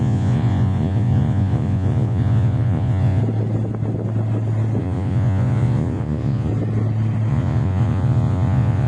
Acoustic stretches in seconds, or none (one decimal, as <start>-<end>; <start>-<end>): 3.2-4.8; 6.5-7.3